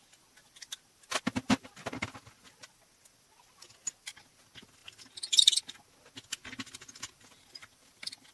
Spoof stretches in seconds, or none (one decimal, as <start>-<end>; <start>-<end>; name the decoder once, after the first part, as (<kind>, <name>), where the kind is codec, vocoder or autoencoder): 7.6-8.3 (vocoder, BigVGAN v2)